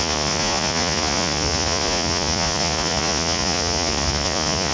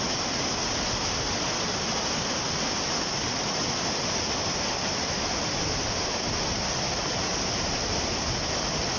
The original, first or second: second